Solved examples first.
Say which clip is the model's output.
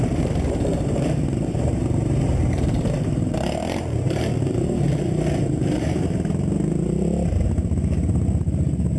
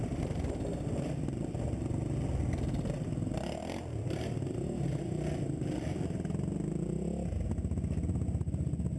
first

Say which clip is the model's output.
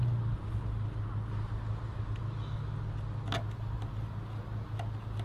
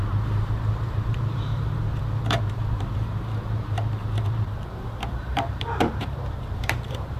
second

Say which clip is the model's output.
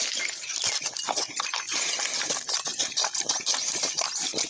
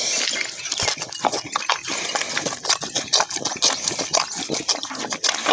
first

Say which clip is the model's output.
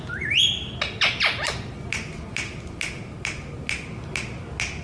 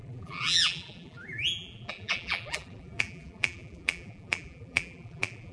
second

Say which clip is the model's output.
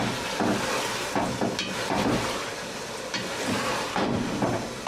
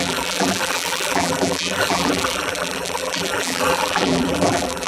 second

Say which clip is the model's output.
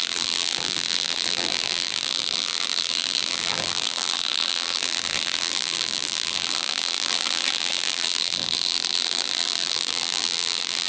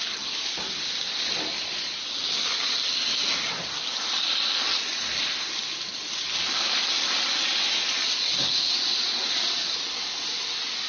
first